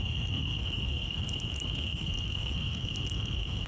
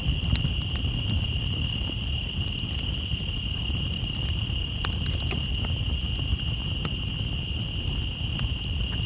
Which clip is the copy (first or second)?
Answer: first